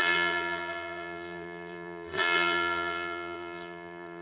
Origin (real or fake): fake